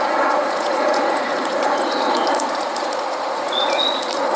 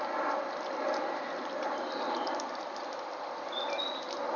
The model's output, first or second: first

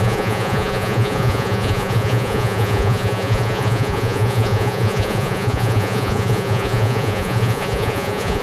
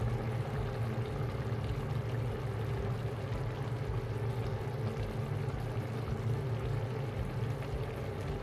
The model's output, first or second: first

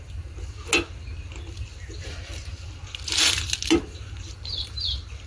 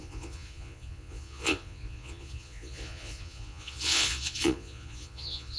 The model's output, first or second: second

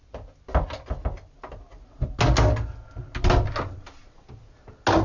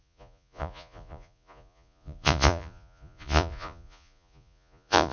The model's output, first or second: second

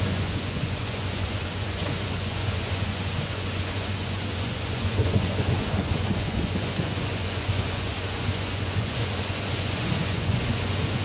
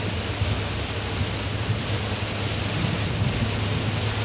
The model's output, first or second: first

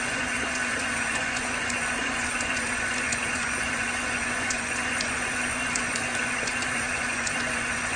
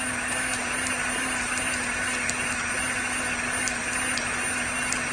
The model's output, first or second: first